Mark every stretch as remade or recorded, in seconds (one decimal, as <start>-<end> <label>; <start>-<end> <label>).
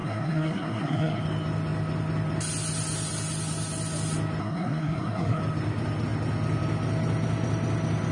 0.0-1.2 remade; 1.2-4.4 recorded; 4.4-5.4 remade; 5.4-8.1 recorded